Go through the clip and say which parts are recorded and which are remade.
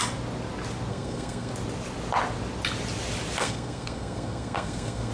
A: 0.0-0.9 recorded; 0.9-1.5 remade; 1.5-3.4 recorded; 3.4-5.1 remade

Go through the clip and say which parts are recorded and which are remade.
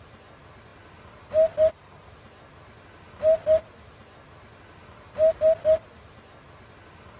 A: 0.0-7.2 recorded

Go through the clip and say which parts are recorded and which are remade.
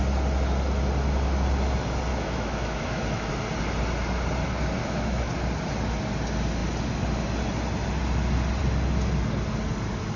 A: 0.0-2.1 recorded; 2.1-3.3 remade; 3.3-4.8 recorded; 4.8-5.3 remade; 5.3-10.2 recorded